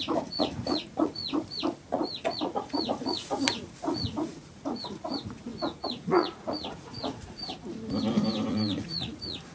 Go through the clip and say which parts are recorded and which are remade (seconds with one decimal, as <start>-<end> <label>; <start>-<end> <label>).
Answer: 0.0-1.2 remade; 1.2-1.9 recorded; 1.9-7.5 remade; 7.5-8.5 recorded; 8.5-9.5 remade